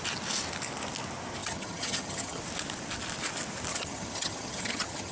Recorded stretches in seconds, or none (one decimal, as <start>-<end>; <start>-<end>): 0.0-1.4; 2.4-3.7